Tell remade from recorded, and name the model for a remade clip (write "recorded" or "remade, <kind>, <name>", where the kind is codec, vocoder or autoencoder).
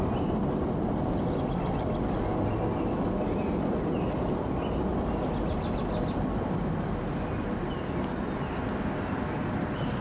recorded